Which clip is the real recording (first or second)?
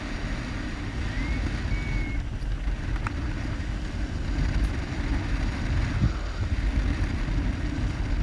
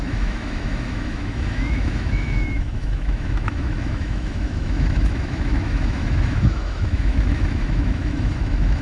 first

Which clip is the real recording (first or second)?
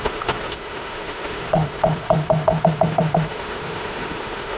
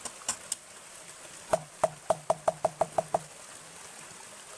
second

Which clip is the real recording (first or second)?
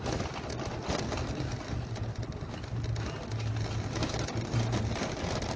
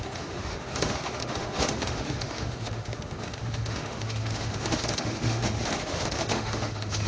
first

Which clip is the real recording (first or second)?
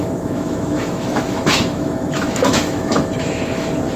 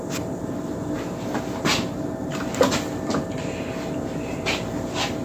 second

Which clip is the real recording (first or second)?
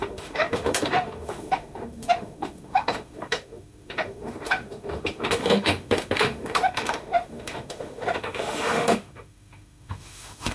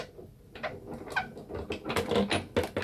second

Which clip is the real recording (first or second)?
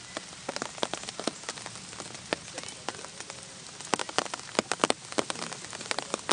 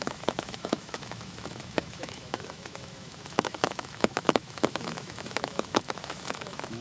first